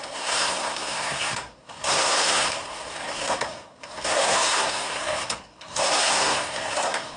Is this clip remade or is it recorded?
remade